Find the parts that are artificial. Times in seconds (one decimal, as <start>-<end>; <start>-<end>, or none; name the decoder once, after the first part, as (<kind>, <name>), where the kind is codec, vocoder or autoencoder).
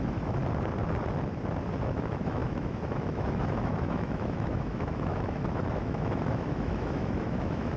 0.0-0.4 (autoencoder, DAC-VAE); 1.8-7.8